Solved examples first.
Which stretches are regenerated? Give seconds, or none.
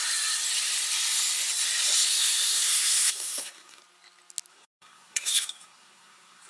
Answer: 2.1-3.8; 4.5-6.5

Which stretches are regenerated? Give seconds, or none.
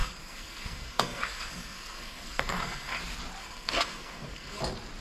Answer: 0.0-3.0; 3.4-4.6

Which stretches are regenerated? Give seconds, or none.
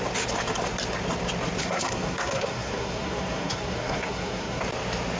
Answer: 1.6-4.6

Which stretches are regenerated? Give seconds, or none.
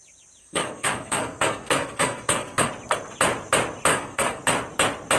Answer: 0.4-2.7; 3.9-4.4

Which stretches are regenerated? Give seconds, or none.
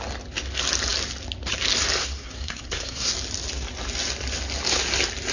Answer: 2.0-3.1